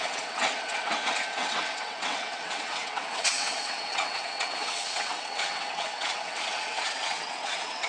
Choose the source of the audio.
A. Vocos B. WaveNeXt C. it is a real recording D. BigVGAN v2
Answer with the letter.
B